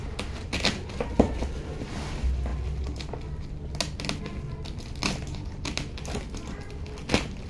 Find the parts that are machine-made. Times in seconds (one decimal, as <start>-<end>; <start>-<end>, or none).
none